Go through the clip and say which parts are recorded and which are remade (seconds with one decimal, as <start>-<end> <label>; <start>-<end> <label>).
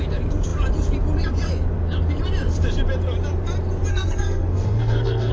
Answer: 0.0-3.9 recorded; 3.9-5.3 remade